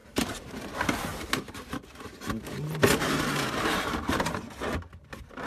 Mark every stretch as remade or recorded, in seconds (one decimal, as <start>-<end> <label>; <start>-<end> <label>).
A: 0.0-0.7 remade; 0.7-1.1 recorded; 1.1-4.4 remade; 4.4-5.5 recorded